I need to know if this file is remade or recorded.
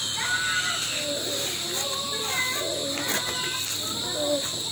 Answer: recorded